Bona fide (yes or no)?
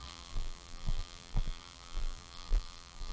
no